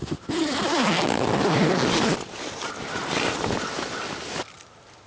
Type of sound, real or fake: real